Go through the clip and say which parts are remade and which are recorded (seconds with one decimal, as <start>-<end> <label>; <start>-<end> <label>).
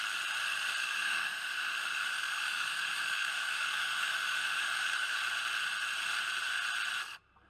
0.0-0.8 recorded; 0.8-5.2 remade; 5.2-7.5 recorded